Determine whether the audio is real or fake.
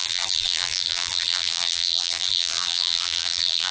fake